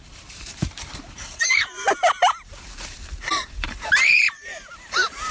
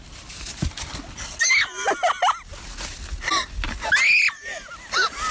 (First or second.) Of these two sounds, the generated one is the first